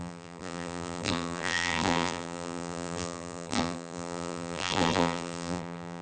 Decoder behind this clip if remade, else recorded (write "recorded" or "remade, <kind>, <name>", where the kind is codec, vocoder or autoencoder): remade, vocoder, BigVGAN v2